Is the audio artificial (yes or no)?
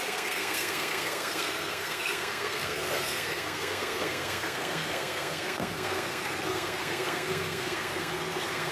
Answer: yes